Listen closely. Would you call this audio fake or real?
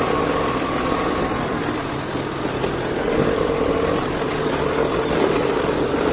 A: real